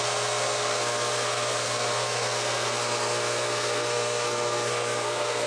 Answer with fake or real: fake